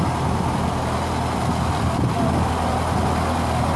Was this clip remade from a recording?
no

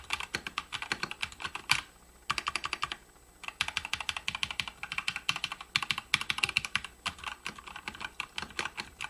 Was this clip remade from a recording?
no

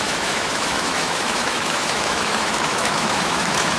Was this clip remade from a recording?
yes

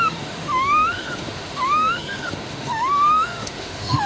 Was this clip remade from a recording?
yes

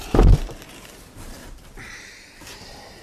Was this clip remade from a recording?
yes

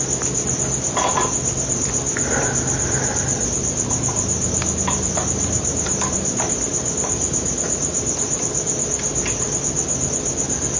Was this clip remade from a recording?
no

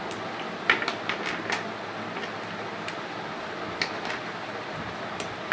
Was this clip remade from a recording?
no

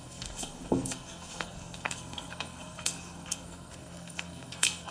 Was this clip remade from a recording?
yes